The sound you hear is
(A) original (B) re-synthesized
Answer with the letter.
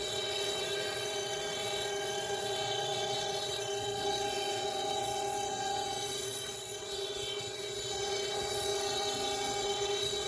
B